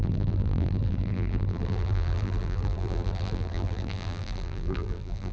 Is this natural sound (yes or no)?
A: no